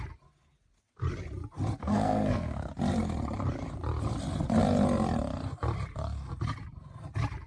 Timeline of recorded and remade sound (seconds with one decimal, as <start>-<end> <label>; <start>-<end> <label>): 0.0-1.8 recorded; 1.8-2.7 remade; 2.7-7.5 recorded